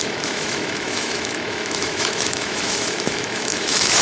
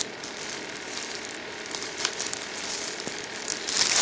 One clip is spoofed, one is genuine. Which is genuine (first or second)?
second